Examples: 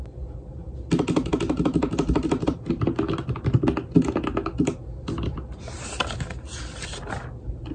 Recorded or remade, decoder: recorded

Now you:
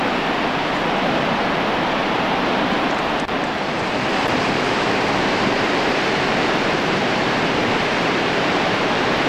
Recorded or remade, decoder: remade, vocoder, BigVGAN v2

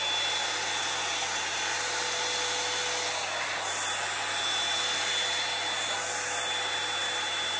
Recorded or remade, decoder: recorded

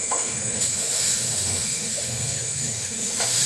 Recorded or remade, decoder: remade, autoencoder, DAC-VAE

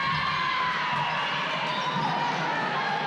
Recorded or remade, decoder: recorded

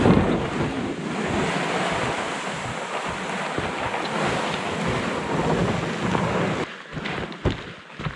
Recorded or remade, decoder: recorded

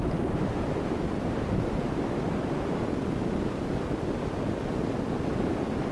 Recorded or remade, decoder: recorded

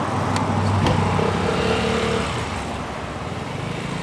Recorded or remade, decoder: recorded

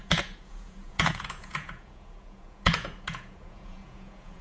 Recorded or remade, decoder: remade, vocoder, Vocos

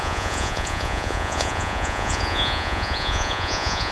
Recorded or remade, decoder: remade, vocoder, Vocos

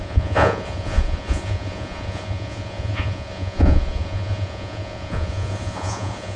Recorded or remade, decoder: remade, vocoder, Vocos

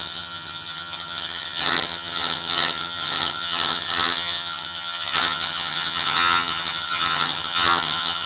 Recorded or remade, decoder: remade, vocoder, HiFi-GAN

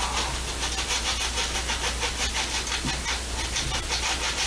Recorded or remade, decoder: recorded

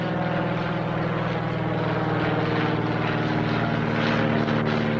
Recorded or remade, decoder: recorded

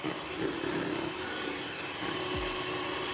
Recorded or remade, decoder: recorded